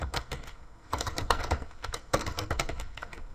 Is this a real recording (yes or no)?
no